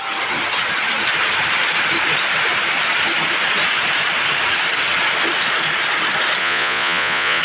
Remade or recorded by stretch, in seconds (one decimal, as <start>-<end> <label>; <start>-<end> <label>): 0.0-6.4 recorded; 6.4-7.4 remade